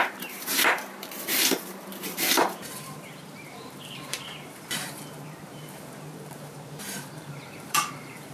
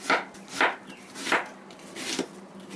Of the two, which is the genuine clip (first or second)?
second